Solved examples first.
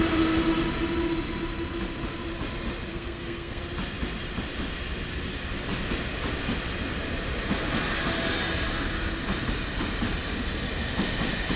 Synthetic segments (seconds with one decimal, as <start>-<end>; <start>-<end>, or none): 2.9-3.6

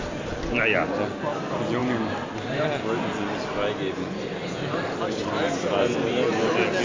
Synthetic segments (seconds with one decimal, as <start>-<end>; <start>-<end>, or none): none

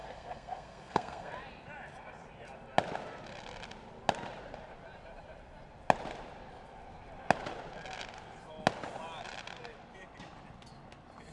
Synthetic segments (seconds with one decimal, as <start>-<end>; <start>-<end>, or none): 0.0-1.3

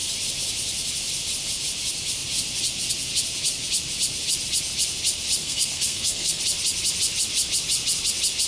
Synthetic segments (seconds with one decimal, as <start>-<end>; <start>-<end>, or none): 5.4-6.4

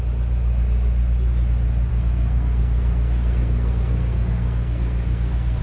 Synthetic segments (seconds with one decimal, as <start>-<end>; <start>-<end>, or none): 1.9-5.6

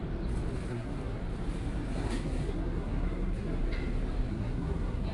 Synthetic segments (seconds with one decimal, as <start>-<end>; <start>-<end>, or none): 0.7-1.2; 1.9-3.6; 4.3-5.1

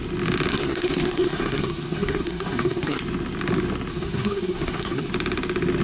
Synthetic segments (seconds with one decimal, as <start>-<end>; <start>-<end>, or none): 0.5-3.0; 3.9-5.1